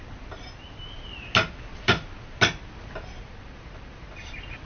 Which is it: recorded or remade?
recorded